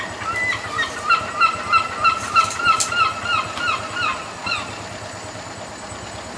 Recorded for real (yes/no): yes